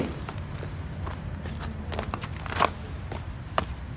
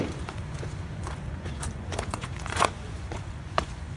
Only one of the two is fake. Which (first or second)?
second